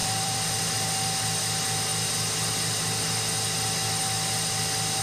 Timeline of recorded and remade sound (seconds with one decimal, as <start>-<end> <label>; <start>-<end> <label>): 0.0-0.6 remade; 0.6-5.0 recorded